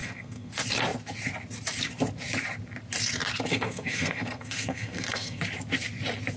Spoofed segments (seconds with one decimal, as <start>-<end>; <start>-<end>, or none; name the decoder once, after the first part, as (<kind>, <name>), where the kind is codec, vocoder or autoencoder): 0.0-0.5 (codec, SNAC); 3.5-5.4